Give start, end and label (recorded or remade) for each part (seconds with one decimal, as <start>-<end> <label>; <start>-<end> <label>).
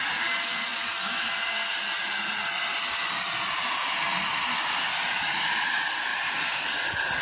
0.0-7.2 recorded